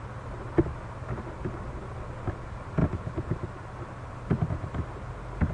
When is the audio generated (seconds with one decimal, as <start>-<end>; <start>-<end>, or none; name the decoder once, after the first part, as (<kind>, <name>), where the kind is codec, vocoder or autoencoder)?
none